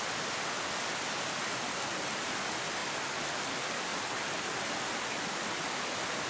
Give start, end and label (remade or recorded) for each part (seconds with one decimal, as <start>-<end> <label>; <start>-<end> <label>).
0.0-6.3 recorded